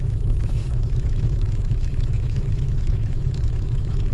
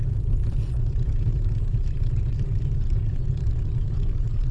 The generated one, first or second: first